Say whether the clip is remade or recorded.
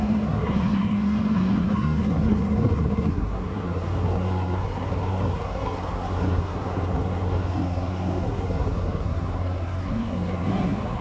remade